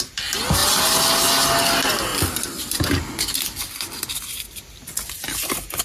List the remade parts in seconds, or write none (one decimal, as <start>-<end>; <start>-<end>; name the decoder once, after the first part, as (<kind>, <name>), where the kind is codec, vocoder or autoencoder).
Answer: none